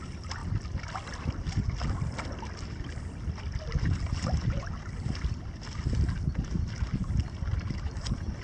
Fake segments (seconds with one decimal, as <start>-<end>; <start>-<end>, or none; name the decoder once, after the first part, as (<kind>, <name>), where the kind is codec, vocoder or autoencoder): none